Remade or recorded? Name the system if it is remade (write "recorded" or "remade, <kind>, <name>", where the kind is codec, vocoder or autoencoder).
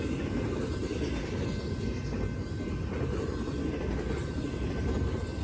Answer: recorded